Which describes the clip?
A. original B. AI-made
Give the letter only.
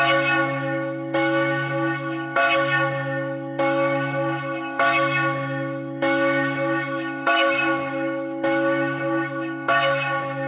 B